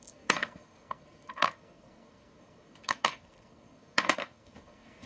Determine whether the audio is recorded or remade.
remade